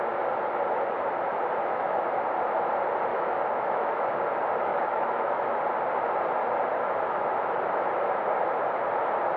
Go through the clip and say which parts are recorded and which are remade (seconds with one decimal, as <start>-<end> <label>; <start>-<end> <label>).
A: 0.0-1.6 recorded; 1.6-2.1 remade; 2.1-3.1 recorded; 3.1-4.2 remade; 4.2-4.7 recorded; 4.7-5.6 remade; 5.6-9.4 recorded